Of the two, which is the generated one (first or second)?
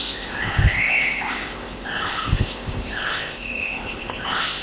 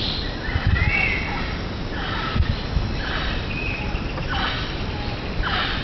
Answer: first